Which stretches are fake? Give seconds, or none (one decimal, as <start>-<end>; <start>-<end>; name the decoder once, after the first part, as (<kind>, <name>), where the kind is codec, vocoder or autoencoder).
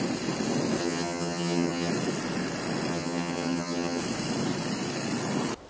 0.8-1.9 (vocoder, HiFi-GAN); 2.9-4.0